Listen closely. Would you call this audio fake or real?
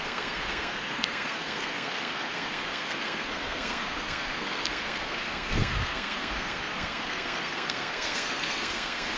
fake